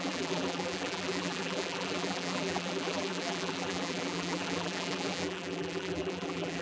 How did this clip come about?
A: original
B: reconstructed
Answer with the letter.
B